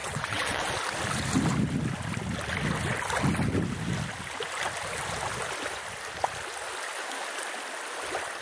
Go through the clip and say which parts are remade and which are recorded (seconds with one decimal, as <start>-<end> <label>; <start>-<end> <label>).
0.0-0.7 remade; 0.7-8.4 recorded